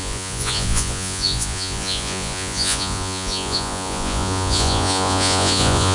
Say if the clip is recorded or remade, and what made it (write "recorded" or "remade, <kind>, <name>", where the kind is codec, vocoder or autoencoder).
remade, vocoder, Vocos